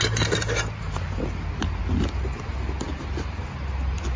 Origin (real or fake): real